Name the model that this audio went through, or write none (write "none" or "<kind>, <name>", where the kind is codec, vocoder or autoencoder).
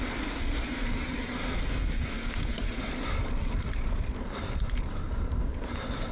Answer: none